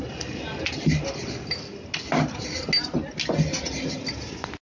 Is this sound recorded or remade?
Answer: recorded